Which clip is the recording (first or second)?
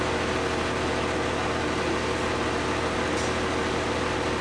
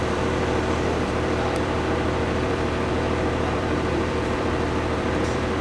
first